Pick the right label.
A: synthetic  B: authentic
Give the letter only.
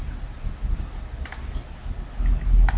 B